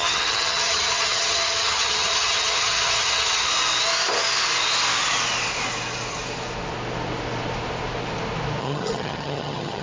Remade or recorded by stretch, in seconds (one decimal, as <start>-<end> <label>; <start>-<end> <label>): 0.0-3.5 remade; 3.5-8.6 recorded; 8.6-9.8 remade